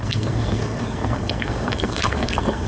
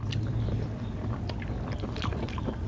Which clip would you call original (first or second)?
second